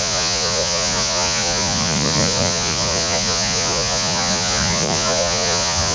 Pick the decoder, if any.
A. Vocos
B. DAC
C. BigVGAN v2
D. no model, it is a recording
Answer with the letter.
A